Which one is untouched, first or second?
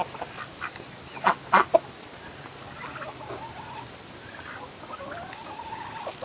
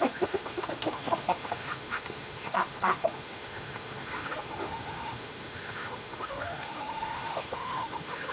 first